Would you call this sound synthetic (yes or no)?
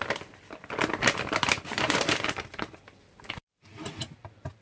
yes